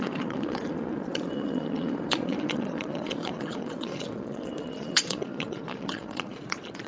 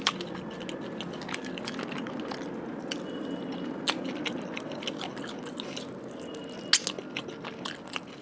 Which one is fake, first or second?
first